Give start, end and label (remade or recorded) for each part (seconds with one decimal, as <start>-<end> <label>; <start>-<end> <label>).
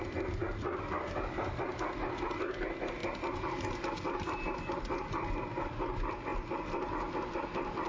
0.0-7.9 recorded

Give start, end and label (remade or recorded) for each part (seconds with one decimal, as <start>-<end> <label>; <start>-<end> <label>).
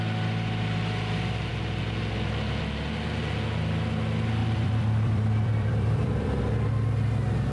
0.0-4.4 recorded; 4.4-6.4 remade; 6.4-7.5 recorded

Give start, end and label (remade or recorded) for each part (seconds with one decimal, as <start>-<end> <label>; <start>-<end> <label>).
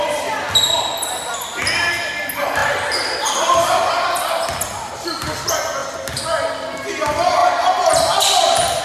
0.0-7.4 recorded; 7.4-8.8 remade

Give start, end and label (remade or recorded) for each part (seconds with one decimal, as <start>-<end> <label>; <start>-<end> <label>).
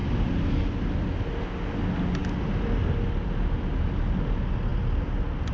0.0-5.5 recorded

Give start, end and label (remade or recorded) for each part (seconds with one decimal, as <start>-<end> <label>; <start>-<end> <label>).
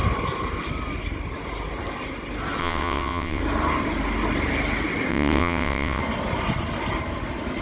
0.0-2.6 recorded; 2.6-3.4 remade; 3.4-5.1 recorded; 5.1-6.0 remade; 6.0-7.6 recorded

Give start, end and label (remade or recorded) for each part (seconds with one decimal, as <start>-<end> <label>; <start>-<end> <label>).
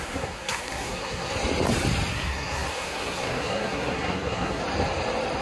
0.0-1.3 remade; 1.3-2.1 recorded; 2.1-4.6 remade; 4.6-5.4 recorded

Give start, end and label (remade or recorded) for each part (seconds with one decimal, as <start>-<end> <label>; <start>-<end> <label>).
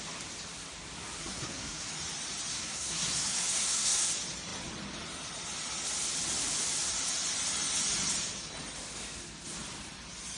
0.0-1.2 recorded; 1.2-1.9 remade; 1.9-2.5 recorded; 2.5-4.1 remade; 4.1-10.4 recorded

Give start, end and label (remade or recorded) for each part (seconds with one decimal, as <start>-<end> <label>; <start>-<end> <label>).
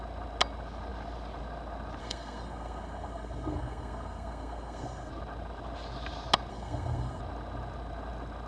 0.0-2.0 recorded; 2.0-5.1 remade; 5.1-6.5 recorded; 6.5-7.2 remade; 7.2-8.5 recorded